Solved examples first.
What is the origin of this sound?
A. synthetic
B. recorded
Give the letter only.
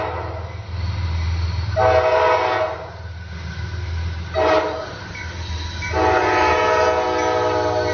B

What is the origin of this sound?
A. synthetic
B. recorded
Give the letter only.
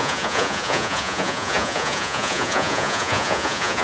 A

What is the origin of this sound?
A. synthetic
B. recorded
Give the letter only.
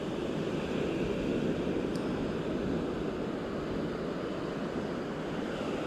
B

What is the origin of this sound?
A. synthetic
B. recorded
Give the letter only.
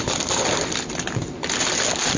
B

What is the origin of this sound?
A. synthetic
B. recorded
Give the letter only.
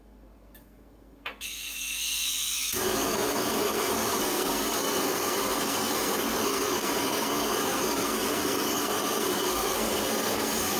A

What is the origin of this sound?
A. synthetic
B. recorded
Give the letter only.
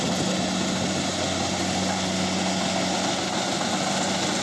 B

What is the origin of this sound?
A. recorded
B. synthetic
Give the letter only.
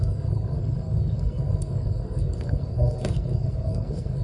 B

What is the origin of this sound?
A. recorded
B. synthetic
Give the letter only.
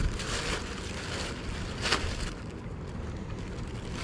A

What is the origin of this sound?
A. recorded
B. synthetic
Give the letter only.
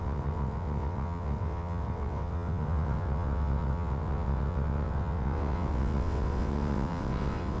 B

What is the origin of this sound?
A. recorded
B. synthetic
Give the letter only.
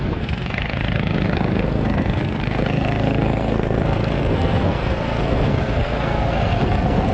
B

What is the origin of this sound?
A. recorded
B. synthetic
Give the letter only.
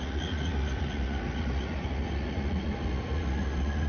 B